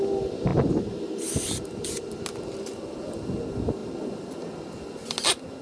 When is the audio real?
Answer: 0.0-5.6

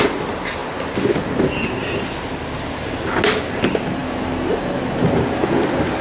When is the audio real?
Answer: 0.0-6.0